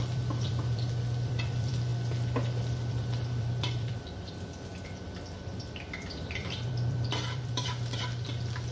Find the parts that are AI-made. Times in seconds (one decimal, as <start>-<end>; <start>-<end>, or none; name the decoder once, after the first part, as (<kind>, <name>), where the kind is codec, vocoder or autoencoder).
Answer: 0.0-1.9 (vocoder, BigVGAN v2); 2.6-4.7; 5.4-8.7